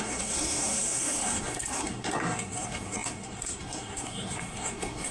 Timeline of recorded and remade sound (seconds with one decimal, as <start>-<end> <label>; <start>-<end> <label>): 0.0-5.1 remade